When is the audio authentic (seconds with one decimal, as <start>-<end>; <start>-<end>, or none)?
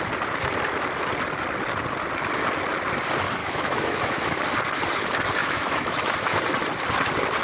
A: 0.0-3.4; 4.4-5.4; 6.4-7.4